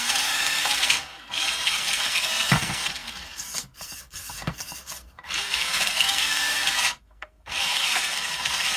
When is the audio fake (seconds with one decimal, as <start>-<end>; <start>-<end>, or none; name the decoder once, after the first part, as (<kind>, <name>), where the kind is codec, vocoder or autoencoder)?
0.0-8.8 (codec, SNAC)